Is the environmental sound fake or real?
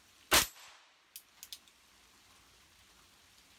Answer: real